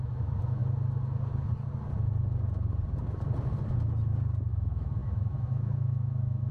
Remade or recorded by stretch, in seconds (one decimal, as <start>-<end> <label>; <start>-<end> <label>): 0.0-0.6 remade; 0.6-4.5 recorded; 4.5-6.5 remade